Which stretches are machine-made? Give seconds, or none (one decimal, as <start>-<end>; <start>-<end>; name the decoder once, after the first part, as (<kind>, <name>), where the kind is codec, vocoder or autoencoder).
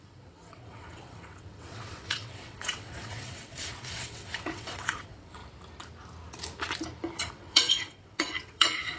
0.0-5.4 (vocoder, WaveNeXt); 7.3-9.0